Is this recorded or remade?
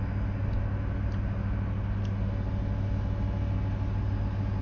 recorded